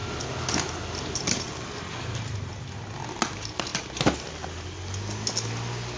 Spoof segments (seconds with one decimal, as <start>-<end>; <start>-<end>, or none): none